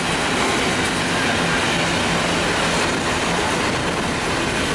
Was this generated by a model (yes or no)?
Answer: no